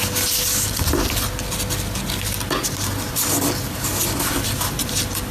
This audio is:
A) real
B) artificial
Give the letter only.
A